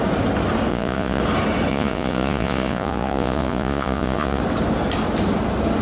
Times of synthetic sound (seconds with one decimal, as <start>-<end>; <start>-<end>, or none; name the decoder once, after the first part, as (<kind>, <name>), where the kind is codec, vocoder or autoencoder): 0.7-1.2 (vocoder, Vocos); 1.7-4.4